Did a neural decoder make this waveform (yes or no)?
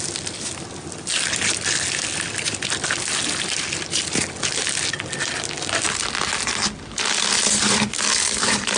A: no